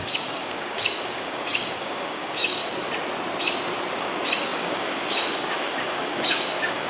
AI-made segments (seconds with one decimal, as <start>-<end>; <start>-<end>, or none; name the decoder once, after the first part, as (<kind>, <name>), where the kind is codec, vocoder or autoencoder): 0.0-2.6 (codec, DAC); 4.0-6.9